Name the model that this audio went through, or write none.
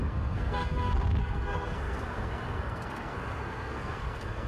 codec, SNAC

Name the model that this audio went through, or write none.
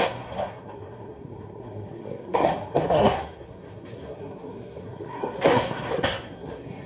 codec, SNAC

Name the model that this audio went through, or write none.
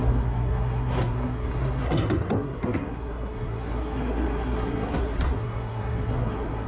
codec, SNAC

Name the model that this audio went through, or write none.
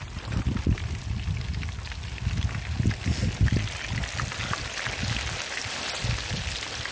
none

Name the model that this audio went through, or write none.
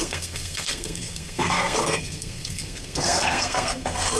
codec, SNAC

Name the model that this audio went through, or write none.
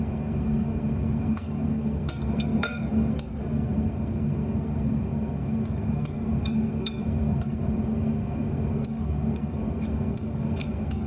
codec, SNAC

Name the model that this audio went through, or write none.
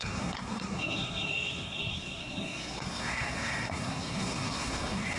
codec, SNAC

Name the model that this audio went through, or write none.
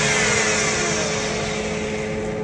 none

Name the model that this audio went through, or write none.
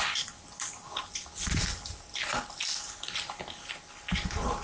none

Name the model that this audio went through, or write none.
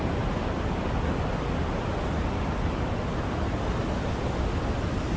none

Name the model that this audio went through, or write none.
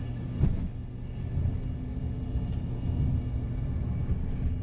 none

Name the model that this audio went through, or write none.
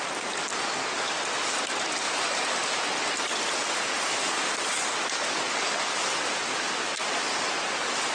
none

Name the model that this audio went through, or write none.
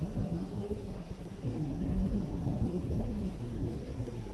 codec, SNAC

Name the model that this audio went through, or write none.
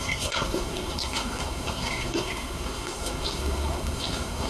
codec, SNAC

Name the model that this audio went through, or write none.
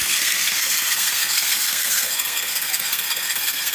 codec, SNAC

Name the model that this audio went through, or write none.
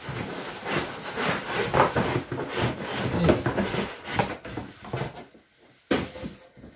none